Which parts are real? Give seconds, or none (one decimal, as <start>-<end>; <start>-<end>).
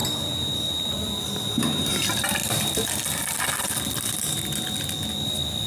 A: 1.1-5.7